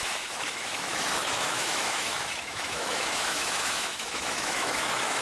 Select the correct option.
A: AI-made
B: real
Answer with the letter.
A